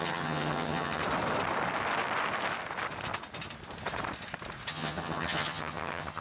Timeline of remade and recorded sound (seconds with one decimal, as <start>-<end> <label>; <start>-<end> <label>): 0.0-1.0 remade; 1.0-4.7 recorded; 4.7-6.2 remade